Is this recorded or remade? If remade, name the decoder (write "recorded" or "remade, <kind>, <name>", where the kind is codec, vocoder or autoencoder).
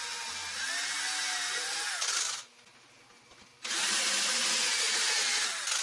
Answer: recorded